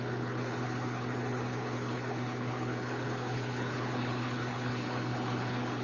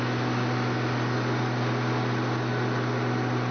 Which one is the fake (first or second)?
first